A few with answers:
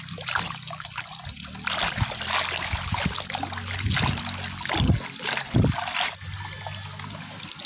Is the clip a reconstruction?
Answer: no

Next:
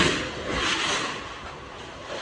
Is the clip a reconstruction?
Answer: no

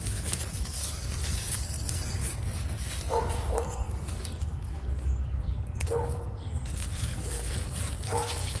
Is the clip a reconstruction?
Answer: yes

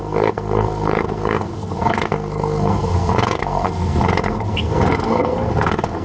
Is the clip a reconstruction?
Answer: yes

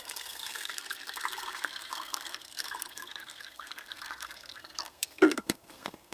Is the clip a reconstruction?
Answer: yes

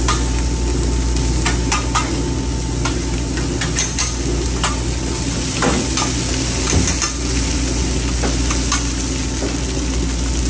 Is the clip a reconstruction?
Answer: no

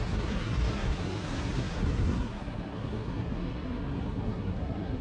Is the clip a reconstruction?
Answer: yes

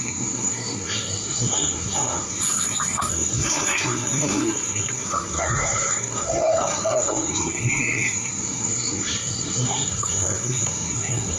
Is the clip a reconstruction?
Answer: yes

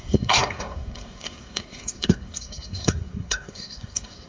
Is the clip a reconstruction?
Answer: yes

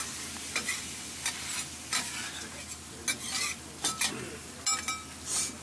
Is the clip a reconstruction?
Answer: no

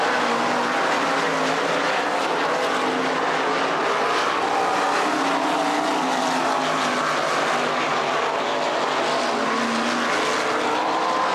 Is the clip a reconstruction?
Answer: no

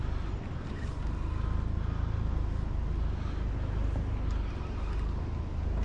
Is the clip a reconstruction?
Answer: no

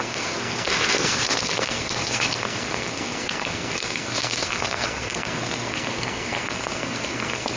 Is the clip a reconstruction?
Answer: yes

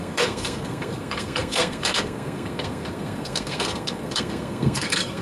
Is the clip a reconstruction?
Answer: yes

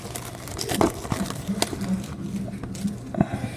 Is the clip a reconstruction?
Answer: no